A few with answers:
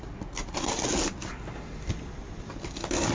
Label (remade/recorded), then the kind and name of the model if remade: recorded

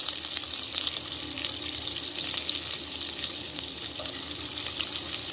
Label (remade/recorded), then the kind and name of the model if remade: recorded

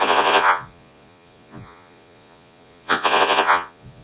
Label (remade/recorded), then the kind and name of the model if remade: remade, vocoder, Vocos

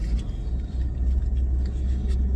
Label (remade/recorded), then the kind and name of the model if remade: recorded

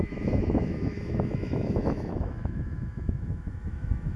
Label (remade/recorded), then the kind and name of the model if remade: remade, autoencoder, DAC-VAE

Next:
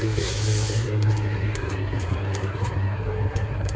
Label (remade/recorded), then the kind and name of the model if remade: remade, codec, SNAC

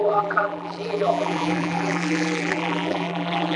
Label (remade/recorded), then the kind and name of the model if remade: remade, vocoder, BigVGAN v2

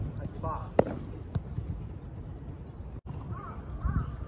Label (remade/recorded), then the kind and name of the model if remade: recorded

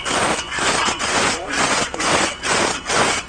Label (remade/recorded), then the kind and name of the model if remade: remade, vocoder, Vocos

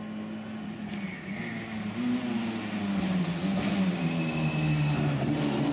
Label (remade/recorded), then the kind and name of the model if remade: recorded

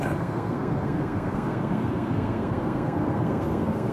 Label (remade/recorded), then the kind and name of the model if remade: remade, codec, SNAC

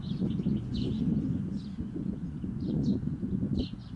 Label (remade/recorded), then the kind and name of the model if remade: remade, vocoder, Vocos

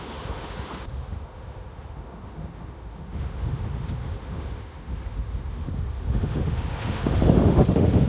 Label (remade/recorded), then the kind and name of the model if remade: remade, autoencoder, DAC-VAE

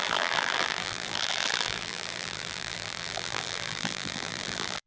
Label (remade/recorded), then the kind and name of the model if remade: remade, vocoder, BigVGAN v2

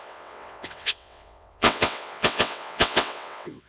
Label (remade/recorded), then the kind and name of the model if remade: remade, vocoder, WaveNeXt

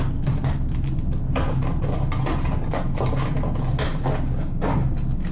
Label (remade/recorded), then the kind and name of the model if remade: recorded